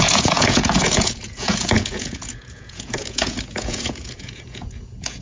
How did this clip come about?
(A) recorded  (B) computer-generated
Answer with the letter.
B